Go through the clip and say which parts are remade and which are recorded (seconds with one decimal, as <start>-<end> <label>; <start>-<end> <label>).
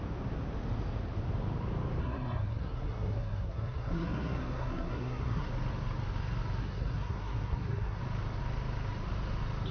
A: 0.0-2.0 recorded; 2.0-5.5 remade; 5.5-6.6 recorded; 6.6-8.0 remade; 8.0-9.7 recorded